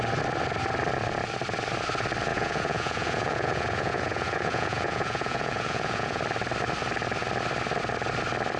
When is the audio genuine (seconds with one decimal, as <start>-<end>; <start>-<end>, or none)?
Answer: 0.0-2.3; 6.2-8.6